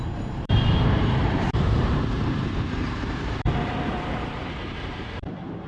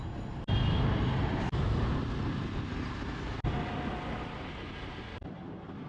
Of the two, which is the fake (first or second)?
first